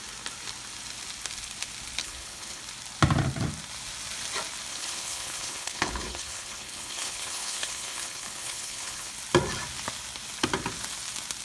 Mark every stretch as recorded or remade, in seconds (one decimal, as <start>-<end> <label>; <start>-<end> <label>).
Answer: 0.0-2.0 recorded; 2.0-2.6 remade; 2.6-4.7 recorded; 4.7-9.1 remade; 9.1-11.4 recorded